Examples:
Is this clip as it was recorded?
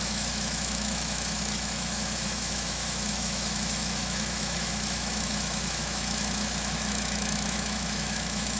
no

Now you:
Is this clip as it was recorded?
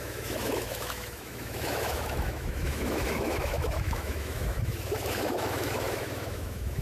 no